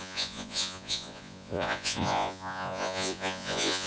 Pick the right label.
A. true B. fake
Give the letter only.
B